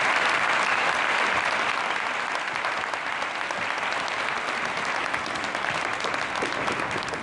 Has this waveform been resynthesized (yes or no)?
no